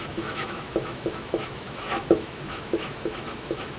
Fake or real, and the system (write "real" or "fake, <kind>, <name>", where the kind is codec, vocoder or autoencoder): fake, autoencoder, DAC-VAE